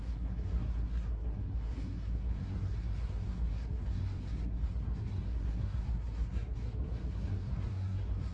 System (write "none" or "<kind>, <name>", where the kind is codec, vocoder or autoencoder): codec, SNAC